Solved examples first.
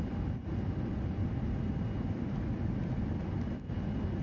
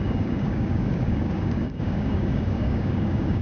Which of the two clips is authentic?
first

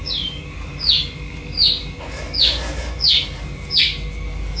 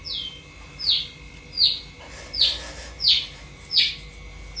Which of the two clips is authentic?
second